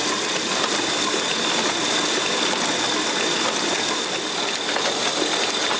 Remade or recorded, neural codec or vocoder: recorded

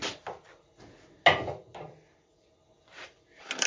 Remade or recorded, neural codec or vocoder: recorded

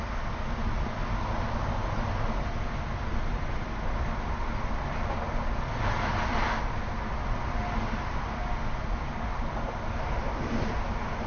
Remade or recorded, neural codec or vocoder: recorded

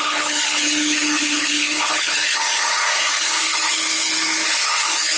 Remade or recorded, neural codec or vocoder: remade, codec, HILCodec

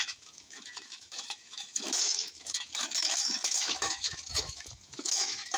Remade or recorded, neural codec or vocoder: remade, autoencoder, DAC-VAE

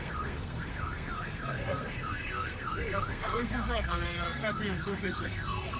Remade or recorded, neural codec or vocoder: remade, codec, SNAC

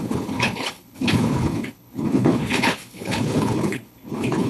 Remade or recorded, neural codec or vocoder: remade, codec, HILCodec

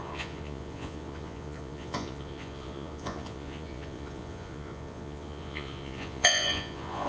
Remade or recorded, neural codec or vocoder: remade, vocoder, Vocos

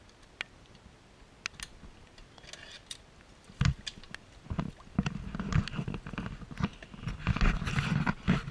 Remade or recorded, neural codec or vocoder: recorded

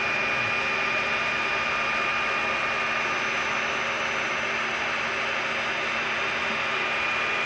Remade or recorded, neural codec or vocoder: recorded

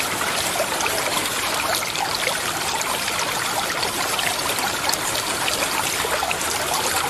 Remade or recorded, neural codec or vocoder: remade, vocoder, BigVGAN v2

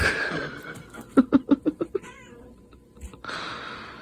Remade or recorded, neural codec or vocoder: recorded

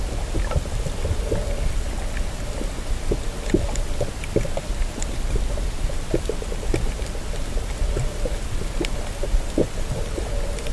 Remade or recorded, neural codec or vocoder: recorded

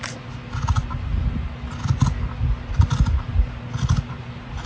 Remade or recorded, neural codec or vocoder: recorded